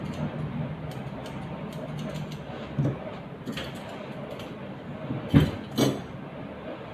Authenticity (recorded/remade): recorded